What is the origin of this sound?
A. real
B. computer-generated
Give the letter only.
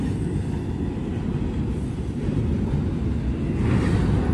A